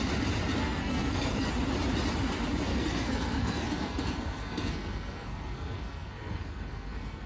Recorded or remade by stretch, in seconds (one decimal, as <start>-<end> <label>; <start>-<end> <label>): 0.0-0.6 recorded; 0.6-1.5 remade; 1.5-2.7 recorded; 2.7-7.3 remade